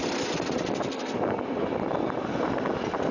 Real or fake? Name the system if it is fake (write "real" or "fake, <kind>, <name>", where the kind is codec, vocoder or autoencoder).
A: real